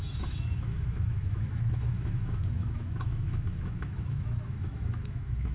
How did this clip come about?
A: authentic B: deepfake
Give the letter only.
B